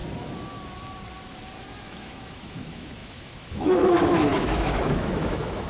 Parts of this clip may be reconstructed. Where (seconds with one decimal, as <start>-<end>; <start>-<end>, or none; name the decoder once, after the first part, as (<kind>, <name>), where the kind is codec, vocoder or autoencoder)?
1.8-5.7 (autoencoder, DAC-VAE)